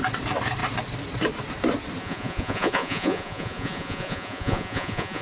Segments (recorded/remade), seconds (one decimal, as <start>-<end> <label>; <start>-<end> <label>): 0.0-2.0 recorded; 2.0-5.2 remade